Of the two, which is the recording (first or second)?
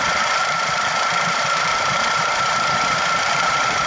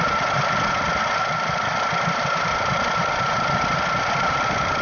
second